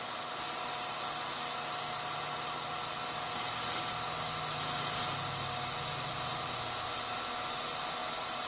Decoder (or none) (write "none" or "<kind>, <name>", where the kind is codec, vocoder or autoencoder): none